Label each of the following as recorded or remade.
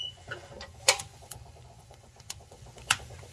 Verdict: remade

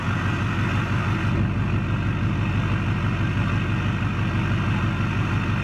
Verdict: recorded